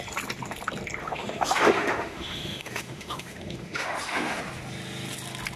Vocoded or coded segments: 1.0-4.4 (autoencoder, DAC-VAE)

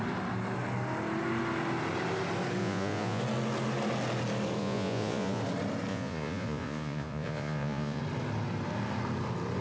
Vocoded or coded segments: 2.6-3.2 (vocoder, Vocos); 4.6-5.4; 5.9-8.0

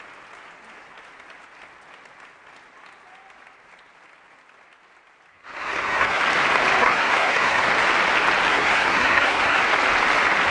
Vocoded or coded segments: 5.3-6.2 (codec, SNAC); 6.8-7.7; 8.5-9.6